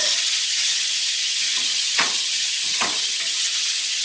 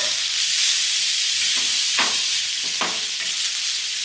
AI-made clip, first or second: first